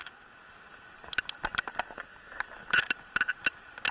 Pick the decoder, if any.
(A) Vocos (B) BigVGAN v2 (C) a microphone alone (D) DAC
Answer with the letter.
C